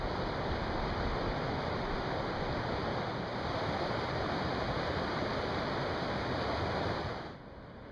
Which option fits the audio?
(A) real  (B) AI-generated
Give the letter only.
A